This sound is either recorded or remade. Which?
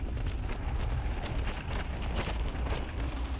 recorded